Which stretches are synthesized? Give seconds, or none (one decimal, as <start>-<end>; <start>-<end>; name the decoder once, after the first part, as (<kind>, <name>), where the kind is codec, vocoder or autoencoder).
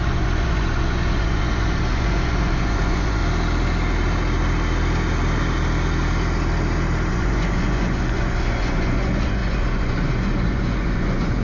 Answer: 0.0-3.2 (vocoder, Vocos); 7.1-11.4